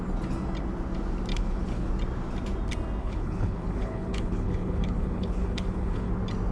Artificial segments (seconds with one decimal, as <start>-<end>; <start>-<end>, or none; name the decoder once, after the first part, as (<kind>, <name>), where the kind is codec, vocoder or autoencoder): 1.3-1.9 (codec, HILCodec); 3.0-6.1